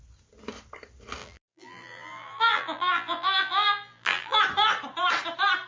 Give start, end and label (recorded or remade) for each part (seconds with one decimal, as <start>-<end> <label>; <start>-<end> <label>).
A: 0.0-1.2 recorded; 1.2-4.4 remade; 4.4-5.7 recorded

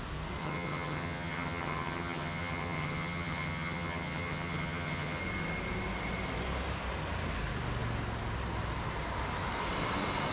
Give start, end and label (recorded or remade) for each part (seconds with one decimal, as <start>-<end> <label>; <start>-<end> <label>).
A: 0.0-0.4 recorded; 0.4-5.2 remade; 5.2-10.3 recorded

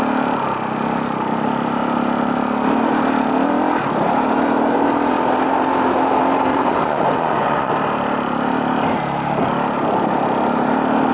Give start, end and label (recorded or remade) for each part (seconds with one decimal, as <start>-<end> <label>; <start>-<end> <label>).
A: 0.0-6.5 recorded; 6.5-7.7 remade; 7.7-11.1 recorded

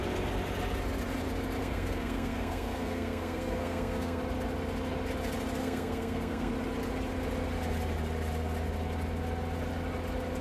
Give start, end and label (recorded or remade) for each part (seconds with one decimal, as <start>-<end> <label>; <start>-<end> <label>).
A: 0.0-1.6 recorded; 1.6-4.2 remade; 4.2-5.6 recorded; 5.6-6.5 remade; 6.5-10.4 recorded

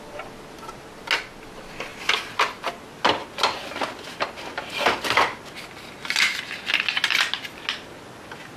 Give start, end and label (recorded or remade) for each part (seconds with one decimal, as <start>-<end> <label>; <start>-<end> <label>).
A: 0.0-8.6 recorded

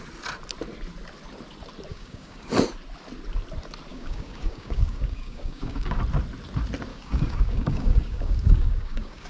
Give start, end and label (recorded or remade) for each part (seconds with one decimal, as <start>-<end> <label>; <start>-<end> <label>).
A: 0.0-1.9 recorded; 1.9-2.5 remade; 2.5-3.9 recorded; 3.9-6.0 remade; 6.0-6.9 recorded; 6.9-9.3 remade

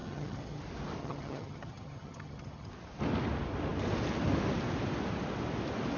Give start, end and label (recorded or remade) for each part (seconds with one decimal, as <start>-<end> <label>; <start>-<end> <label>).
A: 0.0-0.6 remade; 0.6-1.0 recorded; 1.0-2.7 remade; 2.7-6.0 recorded

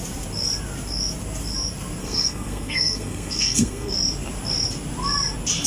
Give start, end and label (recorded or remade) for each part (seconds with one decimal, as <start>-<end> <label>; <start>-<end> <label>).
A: 0.0-2.0 recorded; 2.0-3.9 remade; 3.9-5.7 recorded